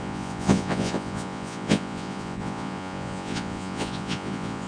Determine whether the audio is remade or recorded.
remade